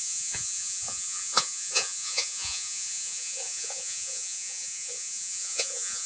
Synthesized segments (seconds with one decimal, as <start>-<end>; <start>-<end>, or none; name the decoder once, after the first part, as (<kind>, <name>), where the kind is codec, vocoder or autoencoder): 0.0-6.1 (vocoder, Vocos)